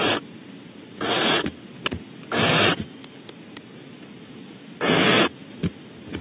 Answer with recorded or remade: recorded